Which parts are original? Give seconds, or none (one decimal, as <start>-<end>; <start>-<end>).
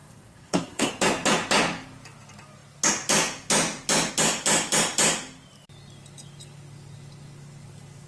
0.9-8.1